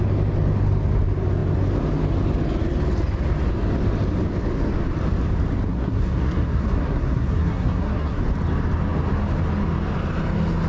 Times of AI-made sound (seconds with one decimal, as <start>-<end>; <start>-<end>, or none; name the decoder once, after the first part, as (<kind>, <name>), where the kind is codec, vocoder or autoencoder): 5.7-8.2 (codec, SNAC)